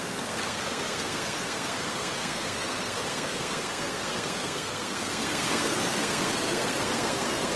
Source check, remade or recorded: remade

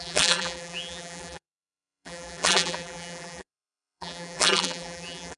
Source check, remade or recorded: remade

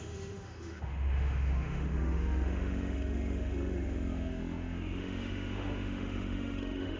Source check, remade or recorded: remade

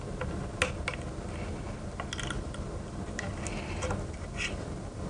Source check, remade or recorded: recorded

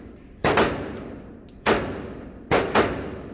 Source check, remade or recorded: recorded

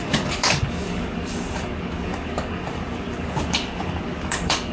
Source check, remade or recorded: remade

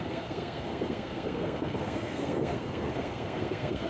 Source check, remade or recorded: remade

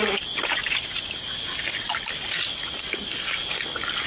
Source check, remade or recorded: recorded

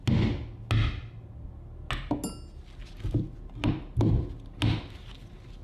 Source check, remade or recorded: recorded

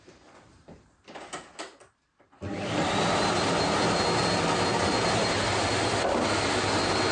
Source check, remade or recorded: recorded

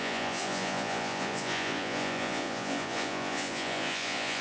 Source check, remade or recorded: remade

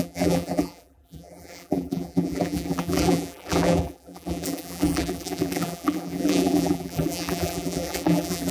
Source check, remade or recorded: remade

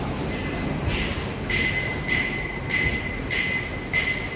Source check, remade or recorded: recorded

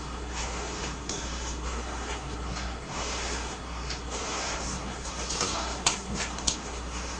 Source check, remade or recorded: remade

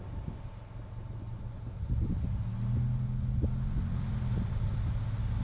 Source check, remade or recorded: recorded